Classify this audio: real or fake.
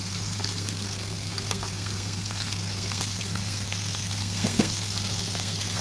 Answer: fake